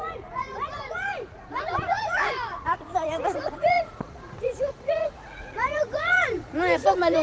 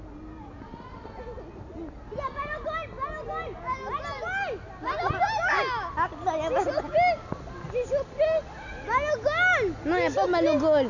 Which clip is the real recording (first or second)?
second